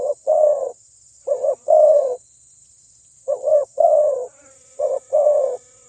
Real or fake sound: fake